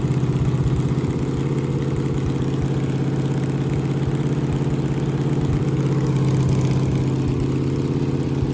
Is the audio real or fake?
real